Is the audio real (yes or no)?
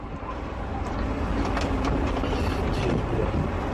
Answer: yes